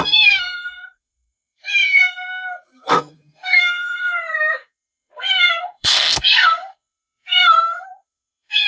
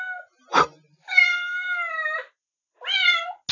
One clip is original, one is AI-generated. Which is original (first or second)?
second